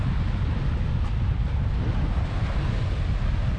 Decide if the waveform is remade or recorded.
recorded